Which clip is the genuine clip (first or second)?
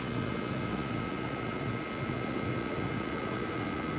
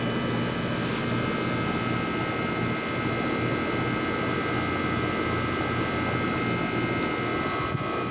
second